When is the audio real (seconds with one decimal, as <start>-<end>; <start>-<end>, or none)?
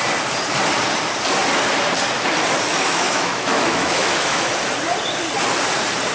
0.0-2.7; 4.5-6.1